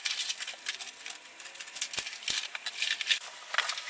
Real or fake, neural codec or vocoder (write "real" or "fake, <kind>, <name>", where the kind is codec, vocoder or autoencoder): real